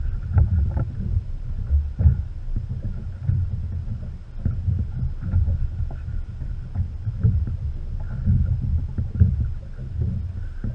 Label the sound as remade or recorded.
recorded